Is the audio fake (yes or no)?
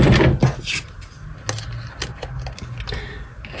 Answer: no